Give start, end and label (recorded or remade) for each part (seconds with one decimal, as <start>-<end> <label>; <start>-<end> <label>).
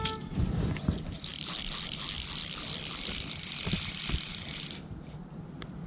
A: 0.0-5.9 recorded